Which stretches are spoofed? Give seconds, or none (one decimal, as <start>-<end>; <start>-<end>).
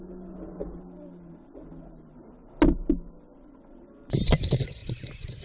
4.8-5.4